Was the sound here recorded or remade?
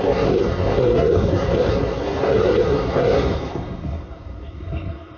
remade